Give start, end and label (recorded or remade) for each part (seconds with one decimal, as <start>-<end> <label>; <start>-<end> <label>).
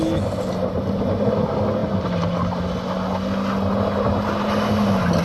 0.0-5.2 recorded